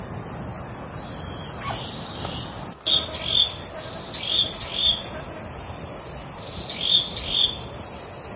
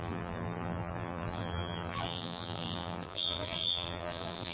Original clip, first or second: first